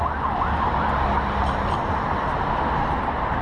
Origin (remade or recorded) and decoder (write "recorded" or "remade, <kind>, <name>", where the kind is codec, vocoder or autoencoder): recorded